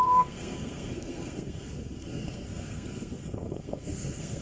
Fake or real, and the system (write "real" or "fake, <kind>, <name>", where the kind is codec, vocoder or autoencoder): fake, codec, SNAC